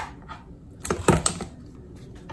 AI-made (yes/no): no